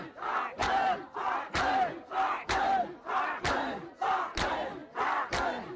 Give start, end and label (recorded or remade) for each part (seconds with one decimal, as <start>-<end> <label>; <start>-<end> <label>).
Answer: 0.0-0.6 recorded; 0.6-4.1 remade; 4.1-5.8 recorded